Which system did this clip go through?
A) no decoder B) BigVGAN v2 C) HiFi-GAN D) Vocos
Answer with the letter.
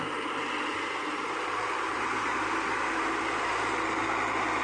A